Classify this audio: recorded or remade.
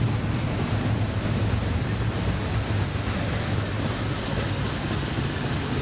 recorded